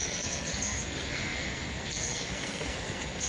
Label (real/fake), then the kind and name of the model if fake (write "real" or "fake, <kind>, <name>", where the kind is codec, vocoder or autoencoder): fake, codec, SNAC